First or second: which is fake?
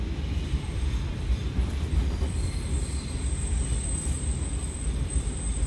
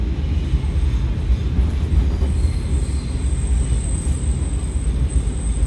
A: first